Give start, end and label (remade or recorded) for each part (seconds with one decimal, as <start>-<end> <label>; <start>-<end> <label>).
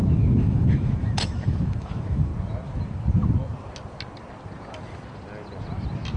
0.0-2.3 remade; 2.3-6.2 recorded